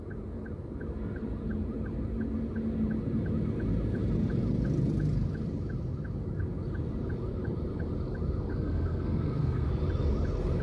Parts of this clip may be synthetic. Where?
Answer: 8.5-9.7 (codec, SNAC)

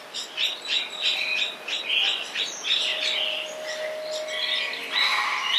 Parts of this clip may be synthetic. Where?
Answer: none

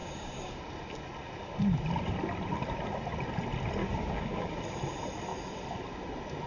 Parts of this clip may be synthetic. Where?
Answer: 0.0-0.6 (codec, DAC); 3.8-4.6

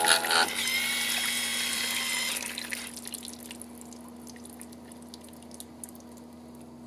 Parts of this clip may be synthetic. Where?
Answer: 1.5-2.4 (vocoder, BigVGAN v2)

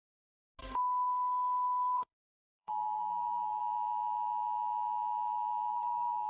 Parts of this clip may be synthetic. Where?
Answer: 0.6-3.6 (codec, SNAC); 5.7-6.3

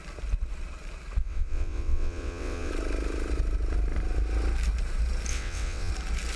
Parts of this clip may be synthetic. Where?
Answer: 1.2-2.7 (vocoder, WaveNeXt); 5.3-5.9

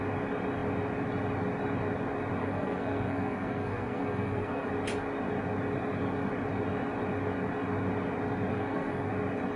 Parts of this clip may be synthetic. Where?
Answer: 2.4-4.7 (codec, SNAC); 8.5-9.1